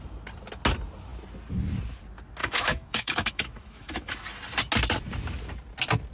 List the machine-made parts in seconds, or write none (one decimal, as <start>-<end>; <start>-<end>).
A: 2.4-4.1